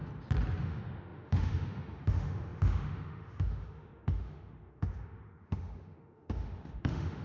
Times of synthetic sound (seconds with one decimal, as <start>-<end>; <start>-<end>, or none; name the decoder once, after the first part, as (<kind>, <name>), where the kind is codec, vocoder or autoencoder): 0.6-7.2 (autoencoder, DAC-VAE)